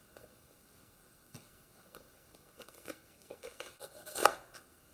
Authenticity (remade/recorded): remade